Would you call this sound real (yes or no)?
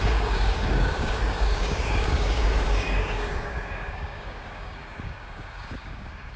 no